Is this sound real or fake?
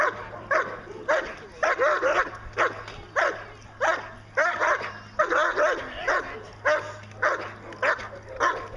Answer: real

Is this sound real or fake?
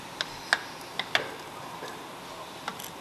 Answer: real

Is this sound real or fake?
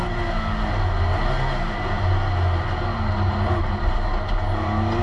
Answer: real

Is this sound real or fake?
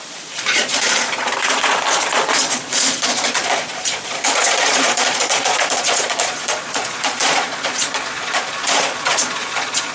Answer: fake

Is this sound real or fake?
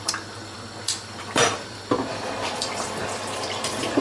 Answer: fake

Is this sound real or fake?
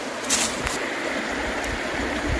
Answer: real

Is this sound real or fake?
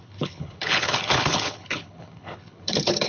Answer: fake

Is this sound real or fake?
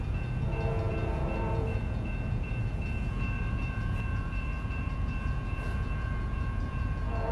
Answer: fake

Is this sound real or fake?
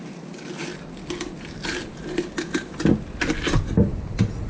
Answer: real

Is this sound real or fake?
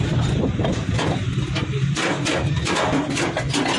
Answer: real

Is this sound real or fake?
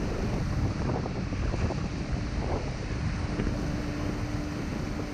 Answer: real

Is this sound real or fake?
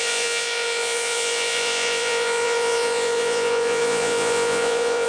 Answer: fake